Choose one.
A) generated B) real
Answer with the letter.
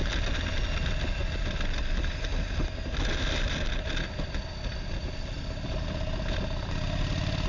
B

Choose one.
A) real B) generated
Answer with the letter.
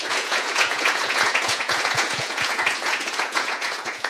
B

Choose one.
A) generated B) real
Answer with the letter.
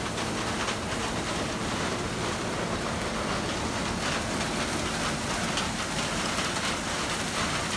B